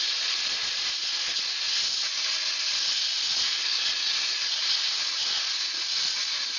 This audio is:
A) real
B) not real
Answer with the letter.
A